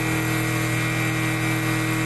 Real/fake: real